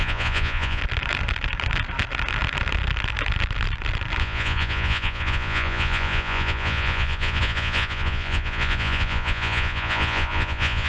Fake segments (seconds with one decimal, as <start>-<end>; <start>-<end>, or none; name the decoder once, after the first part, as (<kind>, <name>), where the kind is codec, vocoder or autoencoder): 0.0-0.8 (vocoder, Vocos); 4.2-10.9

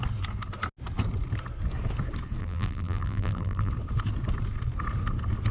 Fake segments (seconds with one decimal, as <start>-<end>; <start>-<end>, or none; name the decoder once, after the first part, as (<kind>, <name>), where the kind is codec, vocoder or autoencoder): 2.4-3.7 (vocoder, BigVGAN v2)

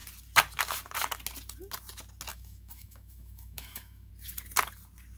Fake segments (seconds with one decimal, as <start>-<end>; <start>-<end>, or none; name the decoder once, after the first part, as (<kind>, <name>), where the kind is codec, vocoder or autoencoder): 2.3-4.1 (autoencoder, DAC-VAE)

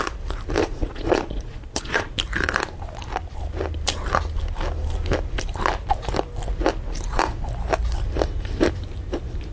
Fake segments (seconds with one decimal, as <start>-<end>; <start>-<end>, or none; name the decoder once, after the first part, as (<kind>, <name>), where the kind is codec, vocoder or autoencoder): 0.6-2.1 (vocoder, Vocos)